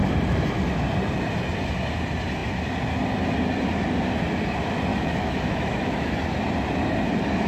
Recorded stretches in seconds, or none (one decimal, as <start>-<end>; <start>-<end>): 0.0-4.9; 6.1-7.5